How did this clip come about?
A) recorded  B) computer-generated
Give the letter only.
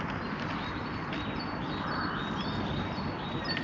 A